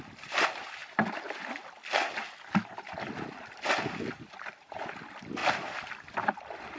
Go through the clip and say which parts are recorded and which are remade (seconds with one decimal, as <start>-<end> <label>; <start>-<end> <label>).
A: 0.0-6.8 recorded